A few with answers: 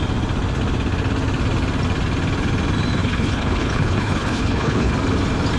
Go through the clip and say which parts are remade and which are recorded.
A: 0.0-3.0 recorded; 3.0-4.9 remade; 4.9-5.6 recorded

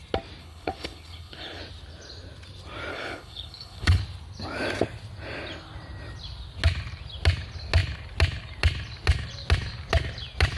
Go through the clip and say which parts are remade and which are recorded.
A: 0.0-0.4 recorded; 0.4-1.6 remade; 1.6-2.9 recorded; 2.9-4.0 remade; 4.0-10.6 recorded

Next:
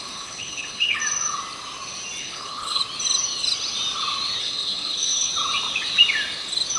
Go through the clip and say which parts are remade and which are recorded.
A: 0.0-1.0 remade; 1.0-2.2 recorded; 2.2-2.8 remade; 2.8-4.4 recorded; 4.4-5.3 remade; 5.3-6.8 recorded